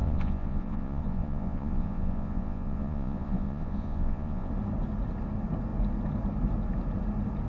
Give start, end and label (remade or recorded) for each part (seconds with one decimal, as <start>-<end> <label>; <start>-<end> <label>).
0.0-4.5 remade; 4.5-7.5 recorded